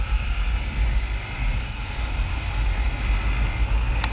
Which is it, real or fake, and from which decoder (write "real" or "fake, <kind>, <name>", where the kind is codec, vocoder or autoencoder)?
real